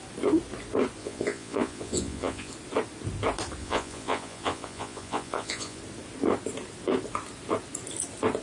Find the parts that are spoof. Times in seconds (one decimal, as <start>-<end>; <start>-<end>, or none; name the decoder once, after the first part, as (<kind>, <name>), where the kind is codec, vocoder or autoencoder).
1.0-2.5 (vocoder, Vocos); 3.6-5.8